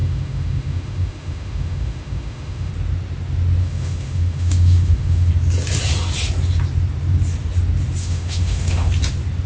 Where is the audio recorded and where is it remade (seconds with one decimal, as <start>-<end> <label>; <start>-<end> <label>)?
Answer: 0.0-2.7 remade; 2.7-3.6 recorded; 3.6-5.3 remade; 5.3-8.0 recorded; 8.0-8.9 remade; 8.9-9.5 recorded